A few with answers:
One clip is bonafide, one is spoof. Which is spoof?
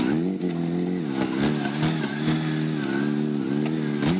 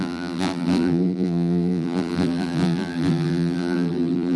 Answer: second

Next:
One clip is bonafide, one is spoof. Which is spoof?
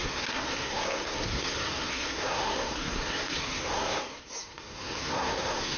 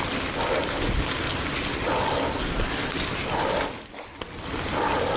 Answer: first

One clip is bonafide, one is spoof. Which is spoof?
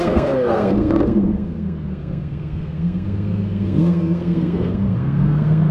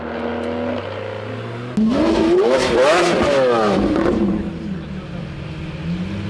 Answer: first